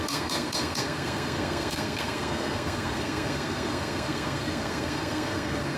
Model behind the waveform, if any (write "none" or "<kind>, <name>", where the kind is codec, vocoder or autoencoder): codec, SNAC